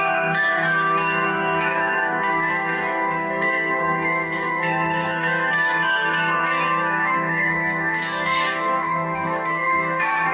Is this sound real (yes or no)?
no